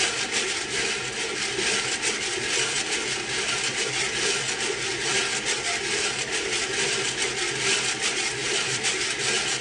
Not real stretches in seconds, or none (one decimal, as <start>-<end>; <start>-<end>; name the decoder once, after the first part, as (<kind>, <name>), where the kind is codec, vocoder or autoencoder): none